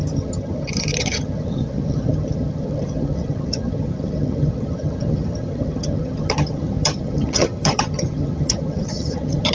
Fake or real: fake